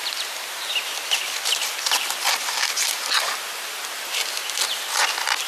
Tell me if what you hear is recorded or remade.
recorded